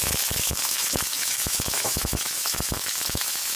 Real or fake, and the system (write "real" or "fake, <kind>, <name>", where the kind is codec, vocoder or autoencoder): fake, autoencoder, DAC-VAE